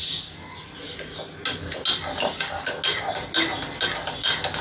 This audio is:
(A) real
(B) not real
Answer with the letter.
A